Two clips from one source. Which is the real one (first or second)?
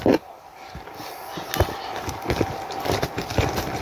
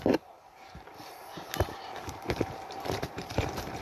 first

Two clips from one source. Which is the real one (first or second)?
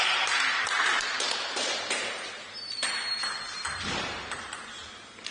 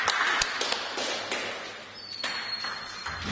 second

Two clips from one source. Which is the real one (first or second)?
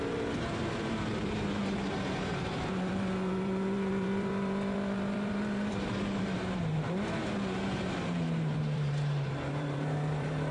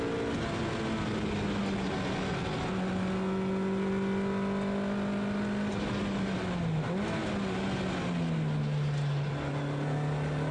second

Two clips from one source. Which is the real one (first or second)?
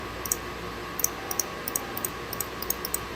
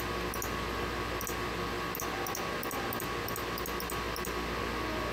second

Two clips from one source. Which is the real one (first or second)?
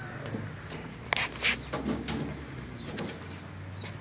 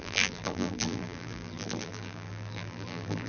first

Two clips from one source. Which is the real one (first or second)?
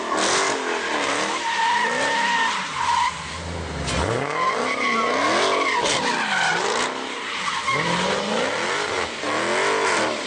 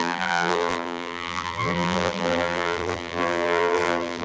first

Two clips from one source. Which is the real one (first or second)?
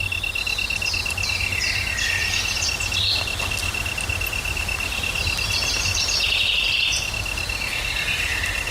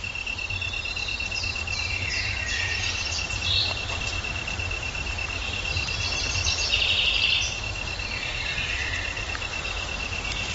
first